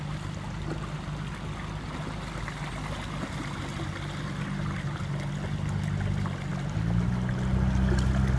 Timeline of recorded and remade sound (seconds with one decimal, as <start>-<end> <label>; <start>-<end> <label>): 0.0-8.4 recorded